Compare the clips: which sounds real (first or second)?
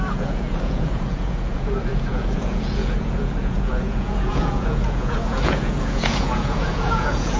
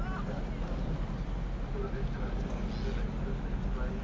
second